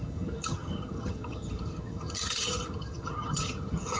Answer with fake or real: fake